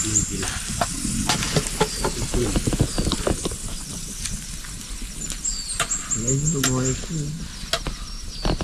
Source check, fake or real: real